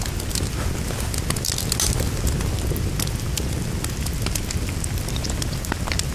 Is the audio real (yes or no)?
yes